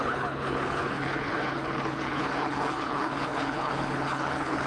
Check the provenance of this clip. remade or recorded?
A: remade